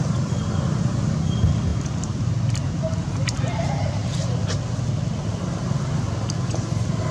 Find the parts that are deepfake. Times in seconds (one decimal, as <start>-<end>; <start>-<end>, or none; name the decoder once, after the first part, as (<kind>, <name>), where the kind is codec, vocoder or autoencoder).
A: none